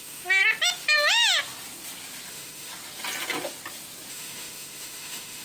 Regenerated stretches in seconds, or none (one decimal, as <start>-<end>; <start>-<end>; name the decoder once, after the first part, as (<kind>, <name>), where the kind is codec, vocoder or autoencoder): 0.0-0.4 (autoencoder, DAC-VAE); 2.3-2.7; 4.1-5.4